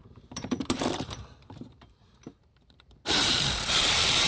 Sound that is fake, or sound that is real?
fake